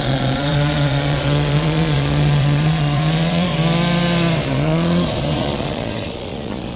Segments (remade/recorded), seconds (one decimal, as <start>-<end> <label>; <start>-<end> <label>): 0.0-3.5 remade; 3.5-4.5 recorded; 4.5-6.8 remade